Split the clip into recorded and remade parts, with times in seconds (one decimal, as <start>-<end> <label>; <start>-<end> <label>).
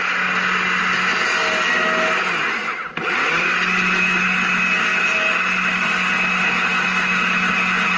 0.0-8.0 recorded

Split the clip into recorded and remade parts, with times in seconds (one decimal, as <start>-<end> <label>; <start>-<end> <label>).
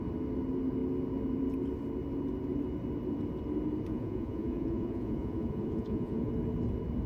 0.0-3.9 recorded; 3.9-6.3 remade; 6.3-7.1 recorded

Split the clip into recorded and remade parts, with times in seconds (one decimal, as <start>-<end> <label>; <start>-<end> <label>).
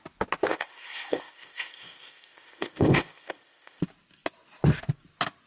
0.0-0.5 recorded; 0.5-3.8 remade; 3.8-5.5 recorded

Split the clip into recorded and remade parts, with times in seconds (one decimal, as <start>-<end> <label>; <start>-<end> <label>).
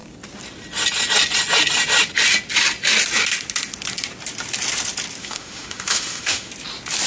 0.0-5.2 recorded; 5.2-6.5 remade; 6.5-7.1 recorded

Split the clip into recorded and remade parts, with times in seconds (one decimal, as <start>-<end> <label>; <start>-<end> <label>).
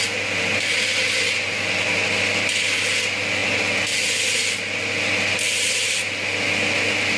0.0-7.2 recorded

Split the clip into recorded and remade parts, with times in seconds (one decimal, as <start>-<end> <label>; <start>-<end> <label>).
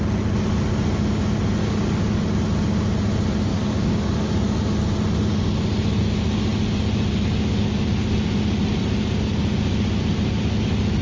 0.0-1.6 recorded; 1.6-2.2 remade; 2.2-3.5 recorded; 3.5-4.6 remade; 4.6-11.0 recorded